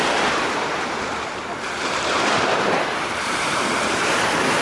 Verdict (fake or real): fake